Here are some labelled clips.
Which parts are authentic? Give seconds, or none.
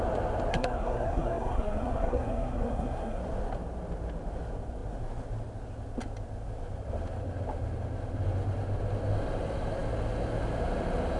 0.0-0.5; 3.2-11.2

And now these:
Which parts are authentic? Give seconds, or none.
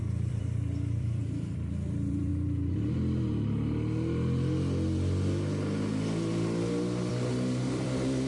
2.3-7.1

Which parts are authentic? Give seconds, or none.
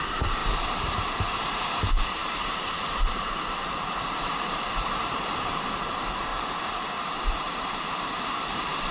6.3-7.1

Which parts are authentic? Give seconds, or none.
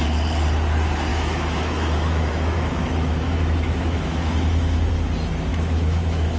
0.0-1.1; 4.9-5.5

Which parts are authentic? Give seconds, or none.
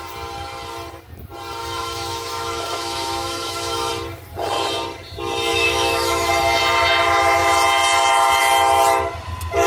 0.0-1.6; 3.9-5.5; 6.3-9.7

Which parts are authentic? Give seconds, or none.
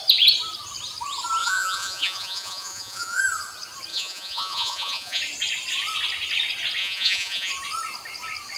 0.0-1.4; 3.2-3.9; 5.2-6.8; 7.5-8.6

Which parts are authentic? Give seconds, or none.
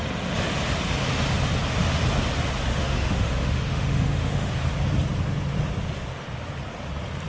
0.0-2.7; 4.5-7.3